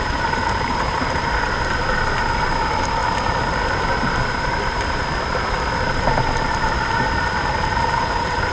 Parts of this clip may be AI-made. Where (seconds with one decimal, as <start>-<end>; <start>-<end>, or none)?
0.0-1.2; 2.4-3.0; 7.8-8.5